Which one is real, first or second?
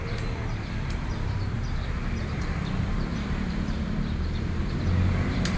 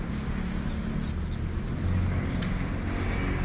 second